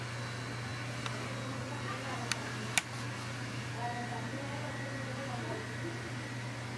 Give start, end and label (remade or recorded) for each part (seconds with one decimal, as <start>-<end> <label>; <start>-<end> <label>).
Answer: 0.0-6.8 recorded